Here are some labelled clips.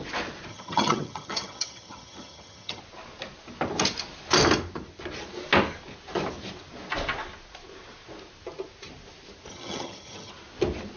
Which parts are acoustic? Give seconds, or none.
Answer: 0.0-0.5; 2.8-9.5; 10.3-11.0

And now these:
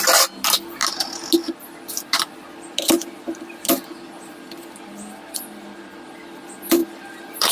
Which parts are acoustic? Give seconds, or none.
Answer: 0.0-6.8

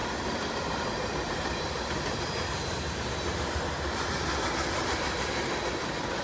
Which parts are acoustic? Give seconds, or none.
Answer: 0.0-6.2

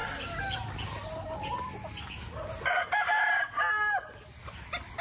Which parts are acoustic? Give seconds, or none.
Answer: 0.0-5.0

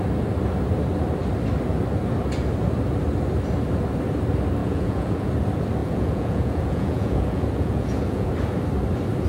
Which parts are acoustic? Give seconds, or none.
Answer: 0.0-4.6; 5.3-5.8; 8.3-9.3

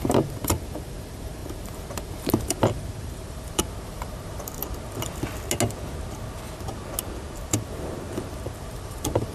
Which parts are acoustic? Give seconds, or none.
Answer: 4.6-8.6

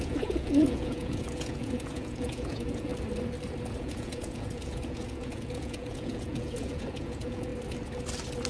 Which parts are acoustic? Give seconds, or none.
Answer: 2.9-3.8; 7.5-8.5

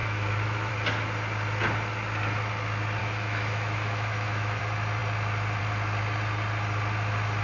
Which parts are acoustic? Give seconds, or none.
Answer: 0.7-3.0; 4.6-7.4